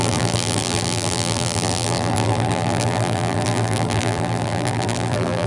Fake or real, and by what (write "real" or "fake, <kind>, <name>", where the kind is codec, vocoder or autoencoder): fake, vocoder, BigVGAN v2